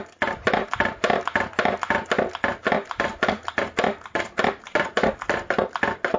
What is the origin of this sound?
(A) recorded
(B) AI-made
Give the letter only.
A